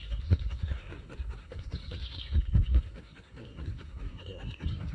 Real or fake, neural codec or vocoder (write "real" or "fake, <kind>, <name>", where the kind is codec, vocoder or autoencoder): fake, codec, SNAC